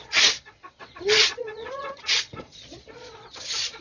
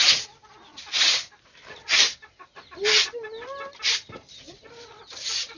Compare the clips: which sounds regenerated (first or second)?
first